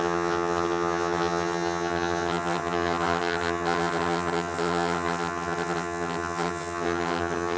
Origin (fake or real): fake